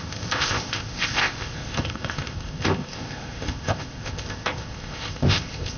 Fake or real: fake